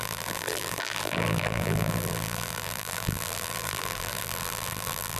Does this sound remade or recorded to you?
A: remade